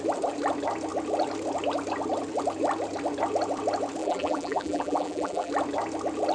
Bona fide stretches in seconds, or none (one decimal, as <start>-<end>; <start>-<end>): 0.0-4.0; 5.5-6.3